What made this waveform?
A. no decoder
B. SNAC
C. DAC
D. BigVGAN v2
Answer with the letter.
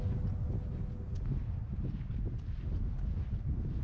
A